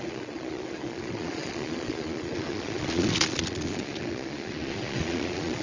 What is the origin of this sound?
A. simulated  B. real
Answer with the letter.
A